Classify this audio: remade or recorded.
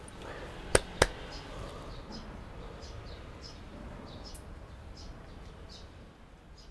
recorded